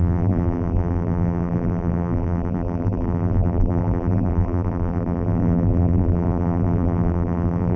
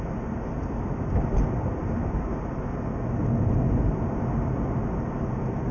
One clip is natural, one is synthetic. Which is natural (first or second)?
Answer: second